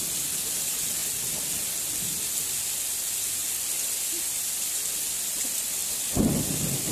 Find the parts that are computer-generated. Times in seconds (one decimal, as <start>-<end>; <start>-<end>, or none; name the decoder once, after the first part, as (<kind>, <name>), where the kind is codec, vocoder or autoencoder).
0.0-1.0 (vocoder, BigVGAN v2); 2.3-3.4; 4.2-6.9